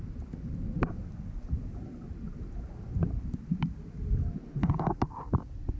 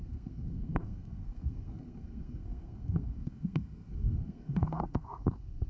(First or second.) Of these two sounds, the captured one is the first